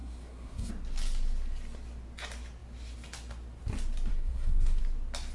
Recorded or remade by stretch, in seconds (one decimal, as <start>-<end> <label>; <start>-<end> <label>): 0.0-0.7 remade; 0.7-4.1 recorded; 4.1-4.8 remade; 4.8-5.3 recorded